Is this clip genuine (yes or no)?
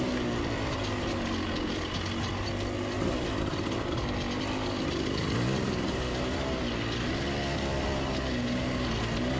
yes